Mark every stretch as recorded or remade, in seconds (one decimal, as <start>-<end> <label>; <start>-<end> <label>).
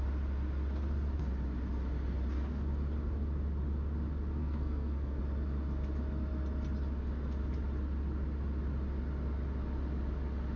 0.0-4.4 recorded; 4.4-5.2 remade; 5.2-10.6 recorded